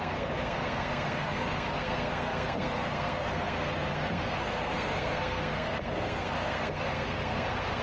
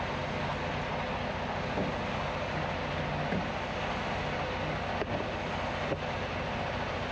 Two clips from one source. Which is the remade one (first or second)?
first